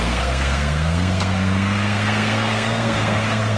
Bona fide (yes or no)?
no